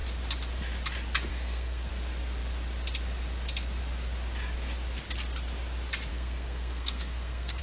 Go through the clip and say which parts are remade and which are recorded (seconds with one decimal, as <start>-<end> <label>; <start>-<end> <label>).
0.0-1.3 recorded; 1.3-1.9 remade; 1.9-6.1 recorded; 6.1-7.6 remade